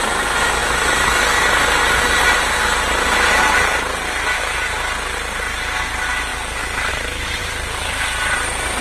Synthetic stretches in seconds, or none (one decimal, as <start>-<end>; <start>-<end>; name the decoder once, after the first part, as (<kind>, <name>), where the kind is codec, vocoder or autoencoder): none